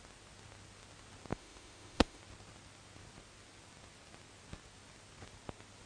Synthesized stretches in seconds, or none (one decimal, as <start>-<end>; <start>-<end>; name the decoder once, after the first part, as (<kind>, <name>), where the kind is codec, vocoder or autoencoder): 1.3-2.2 (autoencoder, DAC-VAE)